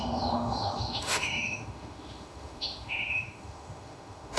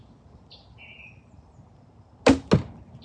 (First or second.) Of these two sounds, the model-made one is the first